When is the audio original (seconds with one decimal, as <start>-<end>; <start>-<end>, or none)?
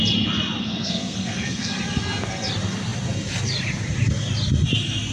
0.0-0.6; 1.8-5.1